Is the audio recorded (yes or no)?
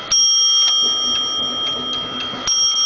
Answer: yes